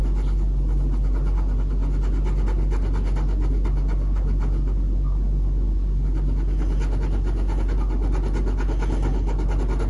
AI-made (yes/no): no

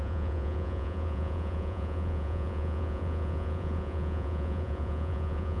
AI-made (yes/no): yes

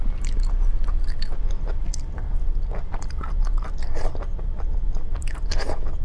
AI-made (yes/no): no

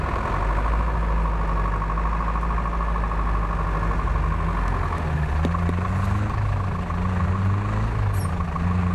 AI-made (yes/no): no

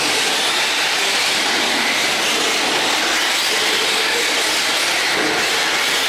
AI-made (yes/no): no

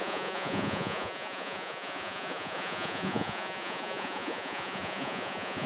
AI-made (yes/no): yes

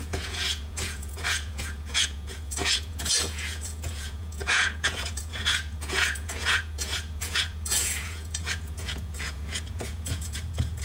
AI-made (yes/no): yes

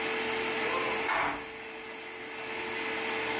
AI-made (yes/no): no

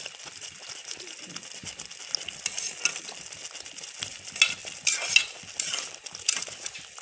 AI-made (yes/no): no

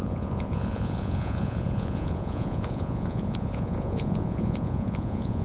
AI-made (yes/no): yes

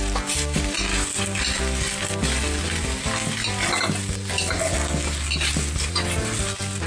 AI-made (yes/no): no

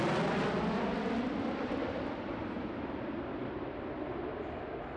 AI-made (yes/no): no